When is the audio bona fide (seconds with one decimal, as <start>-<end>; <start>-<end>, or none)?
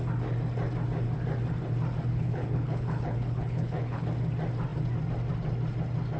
0.0-2.1; 4.1-6.2